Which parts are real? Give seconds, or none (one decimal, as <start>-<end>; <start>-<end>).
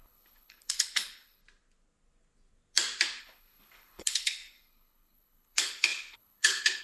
1.4-3.2